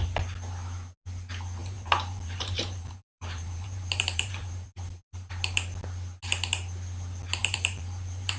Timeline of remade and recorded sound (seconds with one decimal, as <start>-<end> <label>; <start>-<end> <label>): 0.0-1.6 recorded; 1.6-5.3 remade; 5.3-7.4 recorded; 7.4-8.4 remade